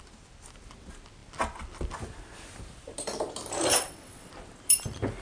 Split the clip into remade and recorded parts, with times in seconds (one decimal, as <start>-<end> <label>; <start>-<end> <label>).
0.0-3.7 recorded; 3.7-4.3 remade; 4.3-5.2 recorded